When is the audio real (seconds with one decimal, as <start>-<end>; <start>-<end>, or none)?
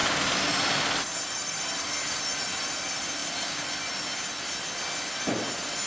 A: 0.0-5.9